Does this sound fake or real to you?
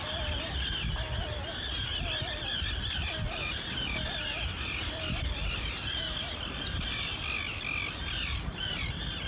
real